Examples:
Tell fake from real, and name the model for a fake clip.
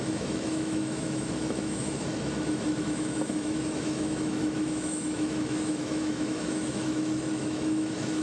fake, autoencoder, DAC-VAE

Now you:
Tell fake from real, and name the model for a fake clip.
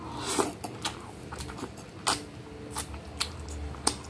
real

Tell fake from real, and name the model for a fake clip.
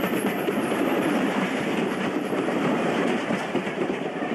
fake, vocoder, BigVGAN v2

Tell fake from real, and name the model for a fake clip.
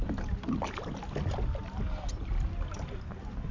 real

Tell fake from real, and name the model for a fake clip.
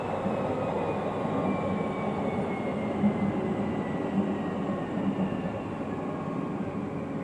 real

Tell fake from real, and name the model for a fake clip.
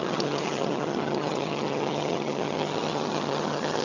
fake, vocoder, HiFi-GAN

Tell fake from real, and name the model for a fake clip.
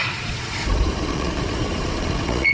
fake, vocoder, Vocos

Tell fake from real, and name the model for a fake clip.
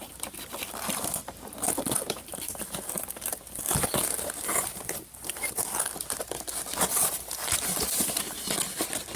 real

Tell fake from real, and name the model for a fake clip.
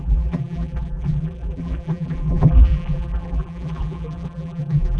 fake, vocoder, BigVGAN v2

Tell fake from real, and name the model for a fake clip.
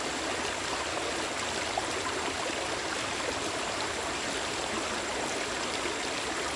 real